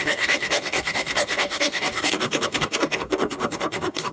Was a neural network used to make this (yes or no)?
yes